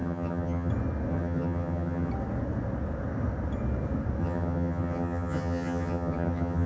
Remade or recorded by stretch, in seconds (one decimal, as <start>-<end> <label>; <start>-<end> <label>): 0.0-0.7 remade; 0.7-1.1 recorded; 1.1-2.1 remade; 2.1-4.2 recorded; 4.2-6.7 remade